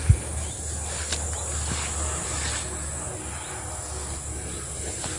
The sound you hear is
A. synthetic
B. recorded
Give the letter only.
B